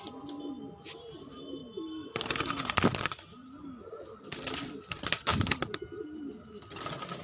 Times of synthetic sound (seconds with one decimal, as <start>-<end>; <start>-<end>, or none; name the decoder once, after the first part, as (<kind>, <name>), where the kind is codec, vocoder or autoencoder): none